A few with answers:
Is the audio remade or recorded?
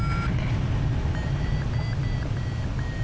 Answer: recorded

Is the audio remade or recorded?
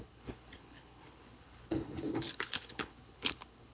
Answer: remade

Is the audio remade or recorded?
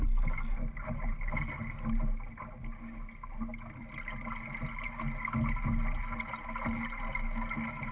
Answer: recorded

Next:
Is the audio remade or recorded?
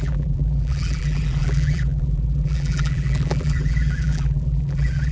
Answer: remade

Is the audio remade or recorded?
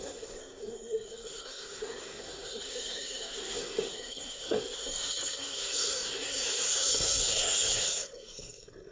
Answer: remade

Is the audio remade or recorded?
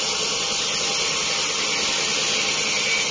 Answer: recorded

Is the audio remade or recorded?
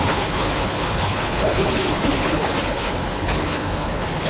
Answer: remade